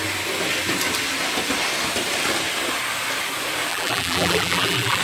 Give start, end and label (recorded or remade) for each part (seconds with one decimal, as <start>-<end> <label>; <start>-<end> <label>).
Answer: 0.0-3.7 recorded; 3.7-5.0 remade